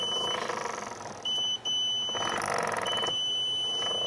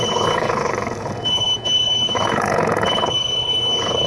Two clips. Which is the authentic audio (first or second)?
first